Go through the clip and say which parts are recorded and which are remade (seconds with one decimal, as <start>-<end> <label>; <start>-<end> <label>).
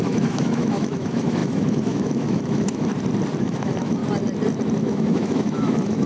0.0-2.9 remade; 2.9-3.4 recorded; 3.4-4.0 remade; 4.0-4.8 recorded; 4.8-6.1 remade